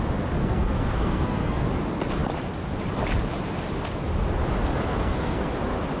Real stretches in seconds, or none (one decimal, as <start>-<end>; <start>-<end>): 0.0-0.4; 1.7-4.9; 5.5-6.0